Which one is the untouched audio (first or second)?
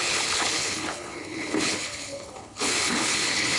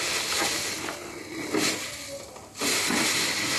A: second